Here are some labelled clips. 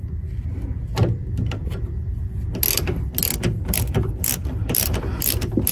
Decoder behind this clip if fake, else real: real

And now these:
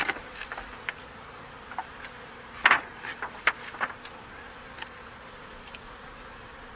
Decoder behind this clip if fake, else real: fake, vocoder, BigVGAN v2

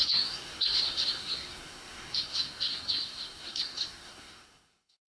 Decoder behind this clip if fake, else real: fake, codec, SNAC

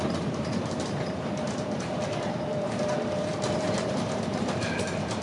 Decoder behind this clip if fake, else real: fake, vocoder, BigVGAN v2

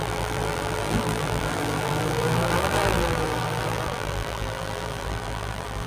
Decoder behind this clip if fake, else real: fake, vocoder, BigVGAN v2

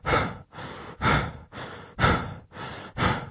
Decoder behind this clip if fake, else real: real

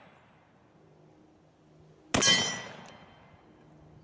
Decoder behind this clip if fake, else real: real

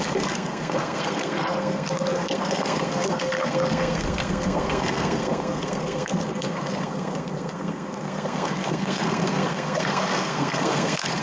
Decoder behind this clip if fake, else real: fake, codec, SNAC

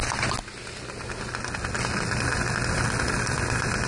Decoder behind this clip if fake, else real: real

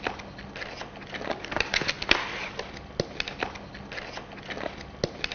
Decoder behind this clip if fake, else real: real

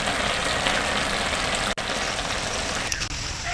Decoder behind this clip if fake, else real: real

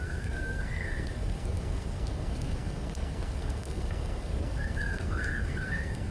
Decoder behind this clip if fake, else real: fake, codec, SNAC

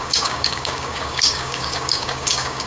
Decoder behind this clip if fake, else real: fake, codec, DAC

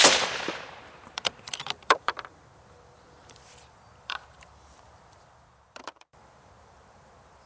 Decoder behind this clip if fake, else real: fake, vocoder, BigVGAN v2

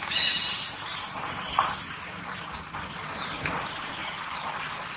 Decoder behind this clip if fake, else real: real